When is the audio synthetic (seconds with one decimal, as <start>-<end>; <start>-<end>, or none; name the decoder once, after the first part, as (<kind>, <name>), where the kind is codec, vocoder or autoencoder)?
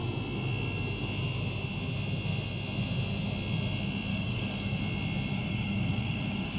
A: 4.1-4.8 (codec, DAC); 5.3-6.6